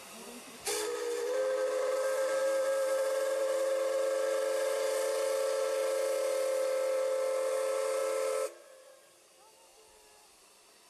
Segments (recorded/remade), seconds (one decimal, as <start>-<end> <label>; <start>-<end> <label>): 0.0-10.9 recorded